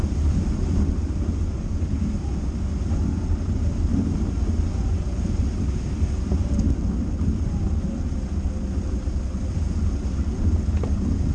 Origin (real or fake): real